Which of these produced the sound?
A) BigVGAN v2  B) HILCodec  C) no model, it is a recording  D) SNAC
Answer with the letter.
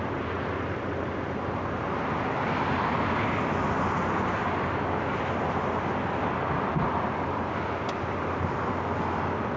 C